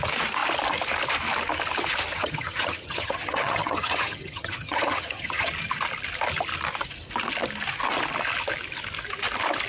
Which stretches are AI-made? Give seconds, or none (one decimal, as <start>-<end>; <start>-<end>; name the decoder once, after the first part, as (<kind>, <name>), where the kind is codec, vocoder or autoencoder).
2.1-5.5 (vocoder, HiFi-GAN)